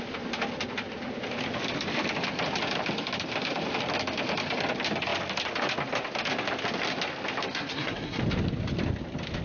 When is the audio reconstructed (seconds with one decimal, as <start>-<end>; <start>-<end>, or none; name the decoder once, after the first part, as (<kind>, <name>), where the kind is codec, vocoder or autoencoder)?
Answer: 7.5-8.2 (codec, SNAC)